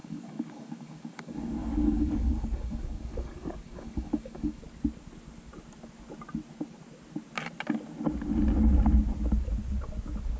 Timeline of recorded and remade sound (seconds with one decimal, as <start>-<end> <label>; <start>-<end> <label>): 0.0-4.6 remade; 4.6-10.4 recorded